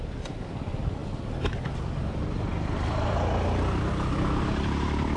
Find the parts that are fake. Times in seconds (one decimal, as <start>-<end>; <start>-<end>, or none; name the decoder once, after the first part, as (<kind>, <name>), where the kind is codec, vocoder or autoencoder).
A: none